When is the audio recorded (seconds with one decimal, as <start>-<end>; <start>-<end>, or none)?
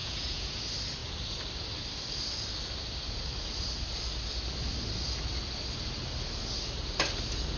0.6-7.6